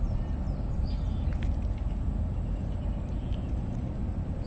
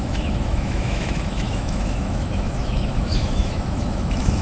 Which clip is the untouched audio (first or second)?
first